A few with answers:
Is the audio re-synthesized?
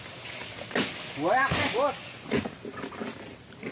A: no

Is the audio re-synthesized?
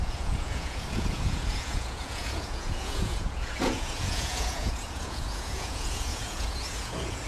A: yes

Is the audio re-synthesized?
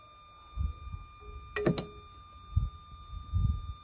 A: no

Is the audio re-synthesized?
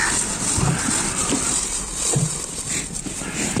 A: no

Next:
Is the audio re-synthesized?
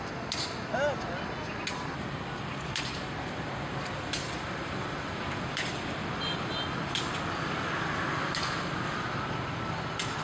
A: no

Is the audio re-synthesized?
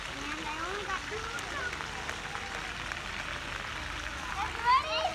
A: no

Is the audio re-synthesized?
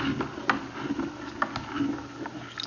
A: no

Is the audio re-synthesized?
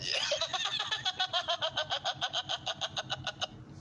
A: no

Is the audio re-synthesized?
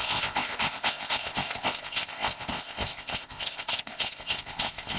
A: yes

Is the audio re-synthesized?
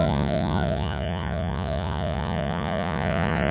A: yes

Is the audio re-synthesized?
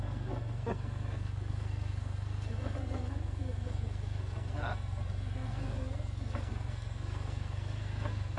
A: yes